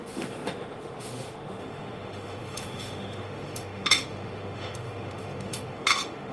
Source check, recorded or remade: remade